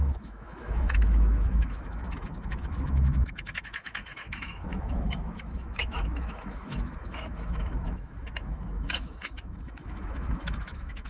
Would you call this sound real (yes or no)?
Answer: no